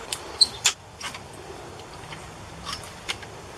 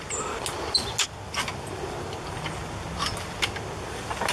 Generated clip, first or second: first